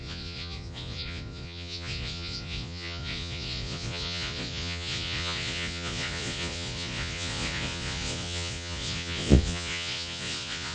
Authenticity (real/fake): fake